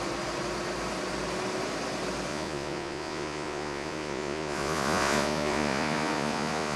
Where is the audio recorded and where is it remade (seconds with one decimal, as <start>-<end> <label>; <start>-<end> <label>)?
0.0-2.3 recorded; 2.3-6.8 remade